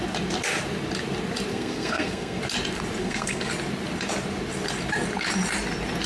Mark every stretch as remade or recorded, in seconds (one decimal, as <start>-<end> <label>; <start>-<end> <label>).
0.0-1.5 recorded; 1.5-2.4 remade; 2.4-3.0 recorded; 3.0-3.5 remade; 3.5-6.1 recorded